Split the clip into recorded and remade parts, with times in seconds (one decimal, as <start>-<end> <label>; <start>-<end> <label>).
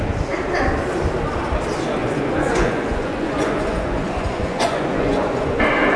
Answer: 0.0-2.0 recorded; 2.0-5.6 remade; 5.6-6.0 recorded